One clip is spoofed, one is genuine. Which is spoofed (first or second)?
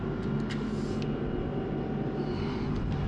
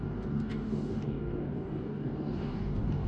second